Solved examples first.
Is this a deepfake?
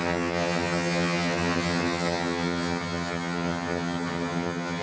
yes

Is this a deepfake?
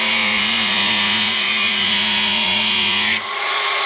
yes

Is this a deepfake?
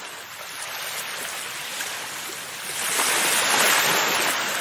no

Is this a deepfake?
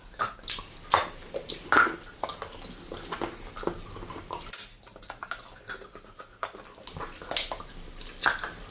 no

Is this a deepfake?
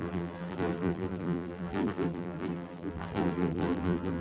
yes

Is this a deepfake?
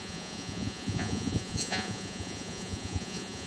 yes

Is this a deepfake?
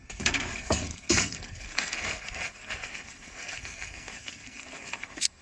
yes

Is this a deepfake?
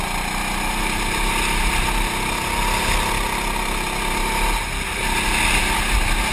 no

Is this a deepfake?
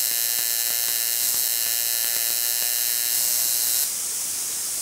no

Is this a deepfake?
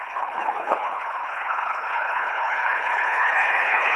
yes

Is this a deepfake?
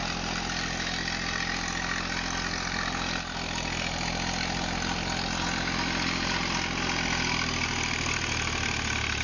no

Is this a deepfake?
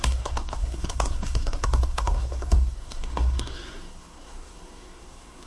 yes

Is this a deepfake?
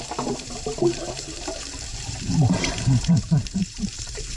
yes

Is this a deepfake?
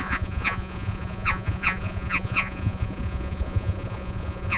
yes